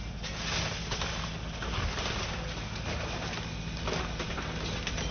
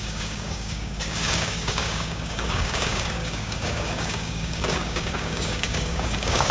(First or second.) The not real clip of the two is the second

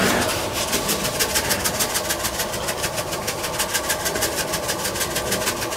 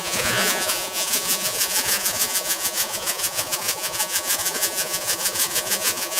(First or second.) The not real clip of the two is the second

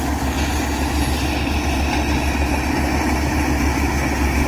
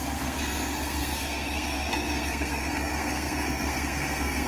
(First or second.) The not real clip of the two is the second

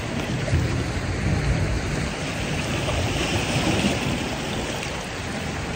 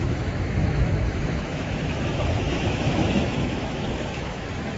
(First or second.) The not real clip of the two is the second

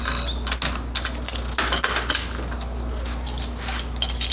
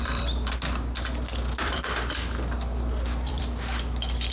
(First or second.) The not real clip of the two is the second